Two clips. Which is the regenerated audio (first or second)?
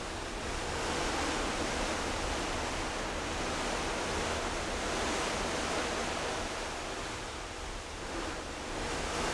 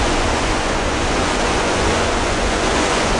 second